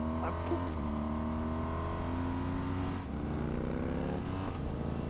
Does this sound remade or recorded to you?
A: recorded